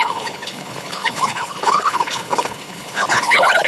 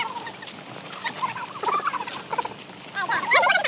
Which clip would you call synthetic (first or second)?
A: first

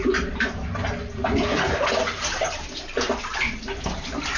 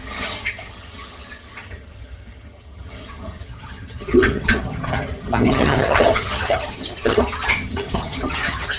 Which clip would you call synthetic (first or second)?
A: second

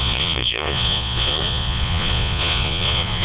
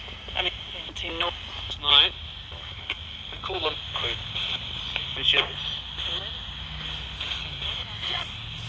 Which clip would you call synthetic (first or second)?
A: first